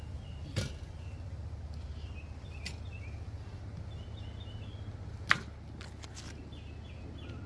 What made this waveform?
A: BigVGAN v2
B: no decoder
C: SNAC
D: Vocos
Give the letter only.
B